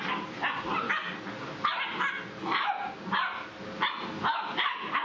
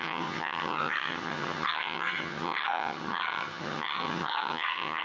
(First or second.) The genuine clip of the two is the first